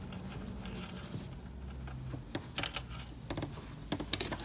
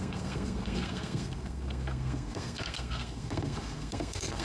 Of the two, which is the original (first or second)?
first